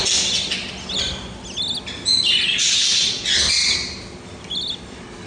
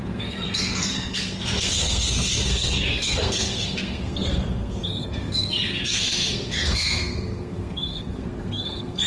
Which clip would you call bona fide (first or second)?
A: first